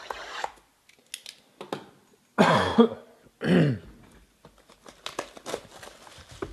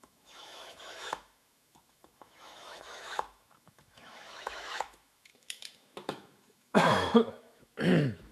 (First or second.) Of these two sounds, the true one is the first